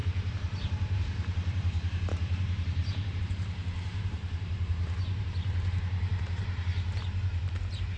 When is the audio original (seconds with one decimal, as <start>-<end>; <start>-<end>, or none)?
none